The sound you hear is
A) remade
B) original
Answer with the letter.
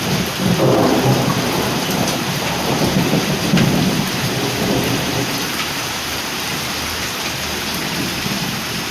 A